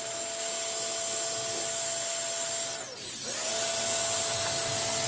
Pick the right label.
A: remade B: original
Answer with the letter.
B